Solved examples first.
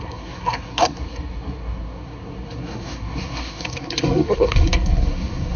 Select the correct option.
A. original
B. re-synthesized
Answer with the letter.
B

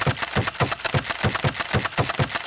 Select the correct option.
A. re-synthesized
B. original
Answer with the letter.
B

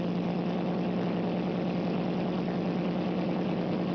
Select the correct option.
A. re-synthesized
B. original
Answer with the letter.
B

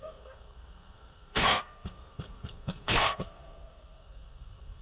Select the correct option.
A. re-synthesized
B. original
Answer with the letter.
A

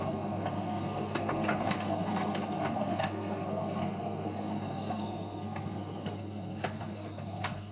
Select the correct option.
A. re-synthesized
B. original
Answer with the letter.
A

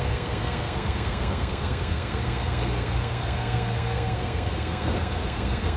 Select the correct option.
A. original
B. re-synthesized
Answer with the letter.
B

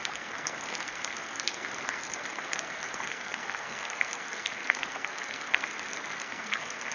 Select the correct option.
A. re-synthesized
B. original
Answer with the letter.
A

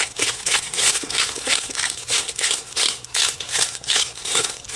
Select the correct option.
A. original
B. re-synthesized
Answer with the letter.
B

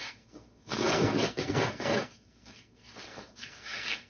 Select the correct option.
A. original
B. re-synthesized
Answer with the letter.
B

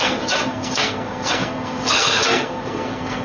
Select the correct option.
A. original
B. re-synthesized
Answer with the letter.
B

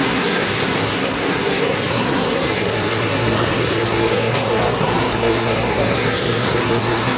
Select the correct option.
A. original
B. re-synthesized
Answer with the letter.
B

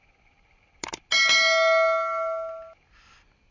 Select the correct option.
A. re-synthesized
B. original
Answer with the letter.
B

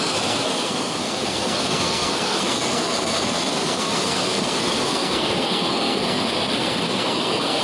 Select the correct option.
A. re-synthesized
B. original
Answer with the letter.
A